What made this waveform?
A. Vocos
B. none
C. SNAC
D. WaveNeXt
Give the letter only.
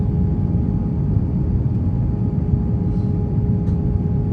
B